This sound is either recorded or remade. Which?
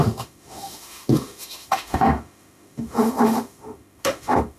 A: remade